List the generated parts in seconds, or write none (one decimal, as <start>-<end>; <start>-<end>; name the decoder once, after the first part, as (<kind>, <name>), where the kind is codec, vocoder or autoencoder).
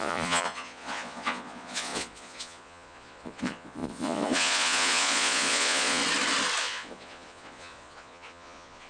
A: 0.0-6.0 (vocoder, Vocos); 6.6-8.9